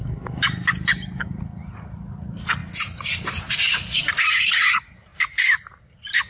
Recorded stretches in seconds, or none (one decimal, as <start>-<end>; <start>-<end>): 0.0-2.6; 4.1-5.1; 5.7-6.3